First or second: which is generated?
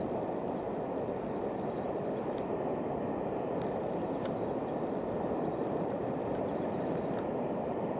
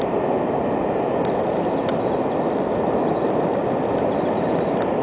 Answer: first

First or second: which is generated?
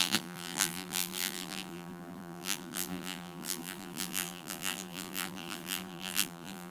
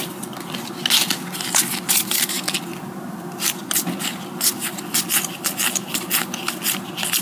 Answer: first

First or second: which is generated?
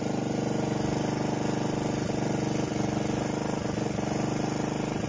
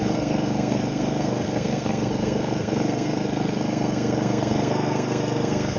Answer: second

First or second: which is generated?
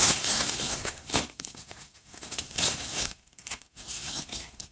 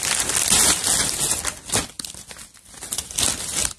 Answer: first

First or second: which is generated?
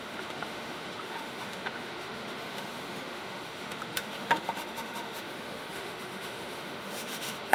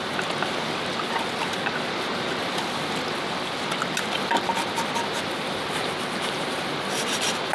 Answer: first